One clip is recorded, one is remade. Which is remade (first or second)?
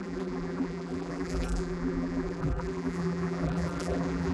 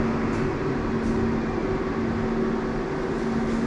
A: first